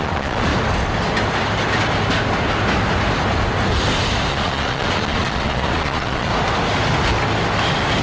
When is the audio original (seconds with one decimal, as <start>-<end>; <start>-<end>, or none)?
0.5-4.3; 6.3-8.0